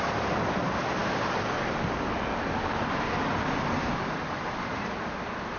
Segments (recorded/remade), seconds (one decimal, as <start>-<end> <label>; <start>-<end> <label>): 0.0-5.6 recorded